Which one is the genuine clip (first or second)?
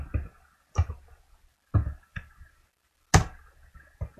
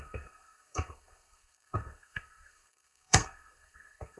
first